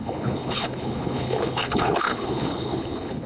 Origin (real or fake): fake